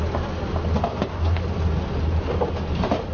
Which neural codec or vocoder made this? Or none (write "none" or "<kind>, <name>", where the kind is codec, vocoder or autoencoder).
none